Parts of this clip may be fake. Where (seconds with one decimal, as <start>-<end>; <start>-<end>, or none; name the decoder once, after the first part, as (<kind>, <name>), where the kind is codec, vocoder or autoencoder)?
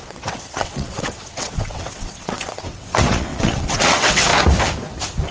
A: 0.0-4.3 (vocoder, WaveNeXt)